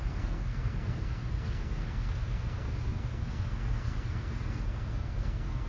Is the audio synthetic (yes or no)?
yes